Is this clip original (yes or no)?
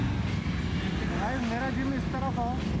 yes